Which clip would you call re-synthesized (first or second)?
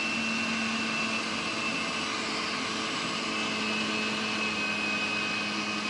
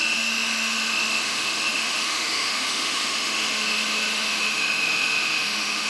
second